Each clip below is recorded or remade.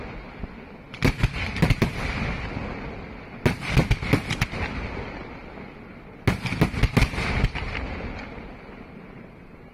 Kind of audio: recorded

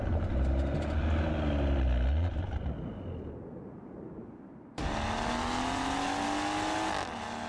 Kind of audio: recorded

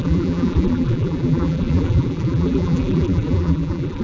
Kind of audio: remade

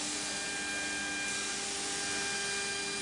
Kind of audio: recorded